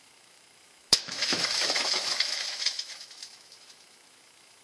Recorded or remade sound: remade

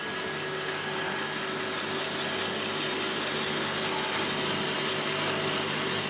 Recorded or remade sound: recorded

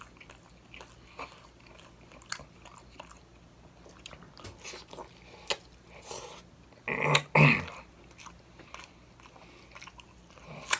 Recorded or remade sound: recorded